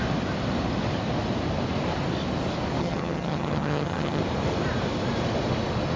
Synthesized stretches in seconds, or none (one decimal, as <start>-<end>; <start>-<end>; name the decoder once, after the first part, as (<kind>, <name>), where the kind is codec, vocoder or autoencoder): 2.8-4.2 (vocoder, HiFi-GAN)